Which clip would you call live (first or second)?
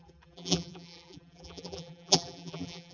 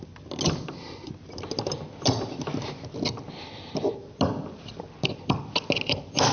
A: second